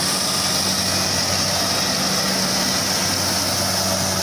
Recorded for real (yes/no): yes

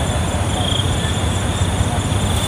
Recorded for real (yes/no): yes